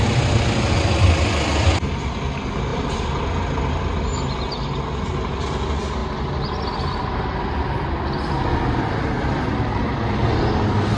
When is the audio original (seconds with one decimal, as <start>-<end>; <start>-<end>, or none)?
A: 0.0-11.0